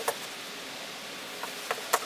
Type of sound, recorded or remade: recorded